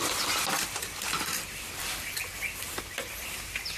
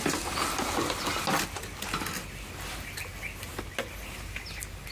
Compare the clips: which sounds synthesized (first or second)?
first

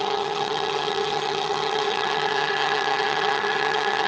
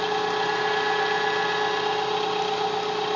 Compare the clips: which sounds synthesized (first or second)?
first